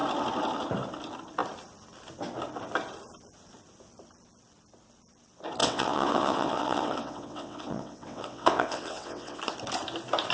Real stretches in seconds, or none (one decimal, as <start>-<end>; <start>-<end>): 0.0-5.6; 9.4-10.3